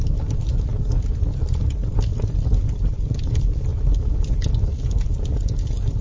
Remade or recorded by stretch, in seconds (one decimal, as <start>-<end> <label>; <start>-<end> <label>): 0.0-0.7 remade; 0.7-1.4 recorded; 1.4-1.8 remade; 1.8-2.8 recorded; 2.8-3.7 remade; 3.7-6.0 recorded